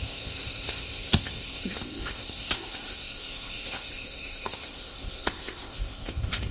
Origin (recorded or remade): remade